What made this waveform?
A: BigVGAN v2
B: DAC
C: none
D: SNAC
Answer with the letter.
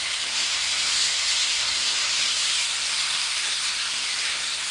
D